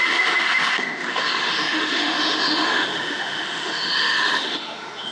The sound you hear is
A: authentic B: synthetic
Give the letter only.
B